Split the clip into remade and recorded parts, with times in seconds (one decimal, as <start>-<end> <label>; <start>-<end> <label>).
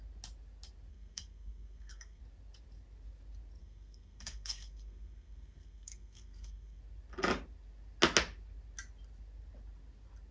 0.0-0.9 recorded; 0.9-2.2 remade; 2.2-3.6 recorded; 3.6-6.8 remade; 6.8-10.3 recorded